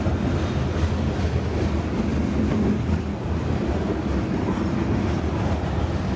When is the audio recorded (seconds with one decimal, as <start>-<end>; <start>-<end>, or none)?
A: 0.0-6.2